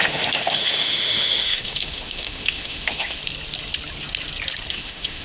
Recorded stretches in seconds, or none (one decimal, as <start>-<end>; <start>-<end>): 3.2-4.7